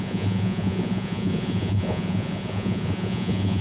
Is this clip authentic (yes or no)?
no